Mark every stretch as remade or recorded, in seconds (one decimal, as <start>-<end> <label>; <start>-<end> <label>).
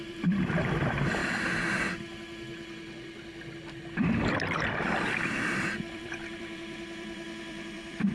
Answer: 0.0-1.2 remade; 1.2-3.9 recorded; 3.9-8.1 remade